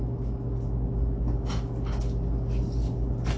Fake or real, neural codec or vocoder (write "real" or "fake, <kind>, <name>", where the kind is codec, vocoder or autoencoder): real